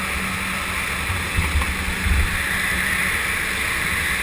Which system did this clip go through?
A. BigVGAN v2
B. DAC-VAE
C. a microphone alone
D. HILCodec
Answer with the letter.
C